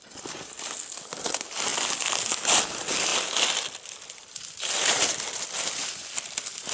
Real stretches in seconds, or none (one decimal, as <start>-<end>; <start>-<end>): 0.0-6.7